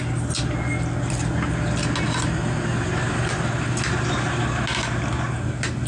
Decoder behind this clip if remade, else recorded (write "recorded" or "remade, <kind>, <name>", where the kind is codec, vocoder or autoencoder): recorded